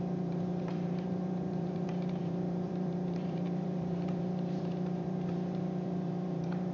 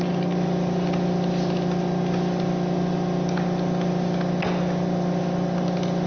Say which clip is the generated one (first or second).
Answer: first